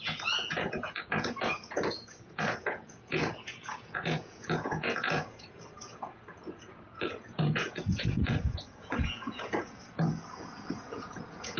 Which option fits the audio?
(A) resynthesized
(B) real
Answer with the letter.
A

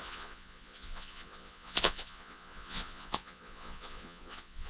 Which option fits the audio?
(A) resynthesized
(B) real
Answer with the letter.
A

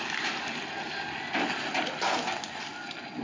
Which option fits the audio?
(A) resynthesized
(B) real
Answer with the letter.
B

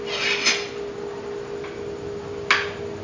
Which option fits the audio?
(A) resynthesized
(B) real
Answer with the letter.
B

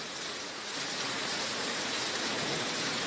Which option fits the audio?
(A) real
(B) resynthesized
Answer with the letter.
B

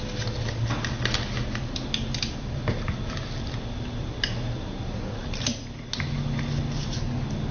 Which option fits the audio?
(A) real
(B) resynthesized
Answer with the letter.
A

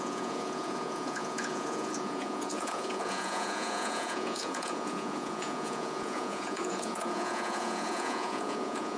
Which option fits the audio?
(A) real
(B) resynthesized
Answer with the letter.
B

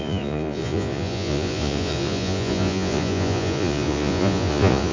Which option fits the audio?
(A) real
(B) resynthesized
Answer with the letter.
B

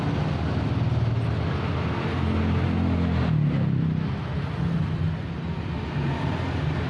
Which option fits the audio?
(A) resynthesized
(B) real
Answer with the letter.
B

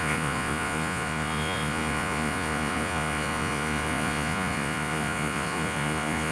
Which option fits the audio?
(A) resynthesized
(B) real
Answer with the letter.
A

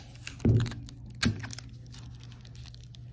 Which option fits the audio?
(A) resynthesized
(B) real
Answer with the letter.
B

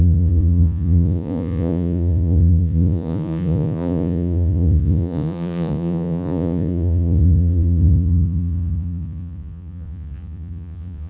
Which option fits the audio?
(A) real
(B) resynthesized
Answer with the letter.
B